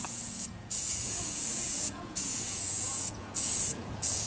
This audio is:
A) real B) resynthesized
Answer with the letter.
B